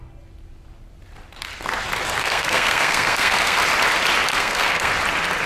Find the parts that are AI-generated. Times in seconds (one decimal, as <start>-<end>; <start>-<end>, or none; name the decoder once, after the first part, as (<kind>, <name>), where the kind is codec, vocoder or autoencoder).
2.2-3.6 (codec, SNAC); 4.3-4.9